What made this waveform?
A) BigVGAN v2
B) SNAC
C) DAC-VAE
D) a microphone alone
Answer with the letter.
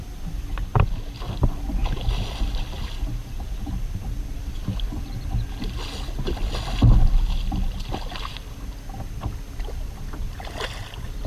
D